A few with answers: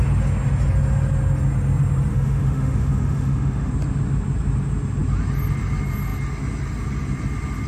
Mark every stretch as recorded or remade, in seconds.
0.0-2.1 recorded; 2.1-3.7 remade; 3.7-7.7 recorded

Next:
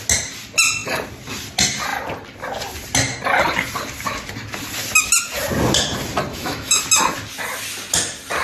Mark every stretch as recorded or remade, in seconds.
0.0-6.3 recorded; 6.3-6.8 remade; 6.8-8.4 recorded